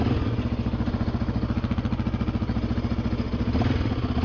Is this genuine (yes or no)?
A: yes